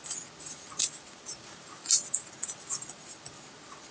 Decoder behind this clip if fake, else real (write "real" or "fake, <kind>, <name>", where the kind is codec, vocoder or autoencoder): real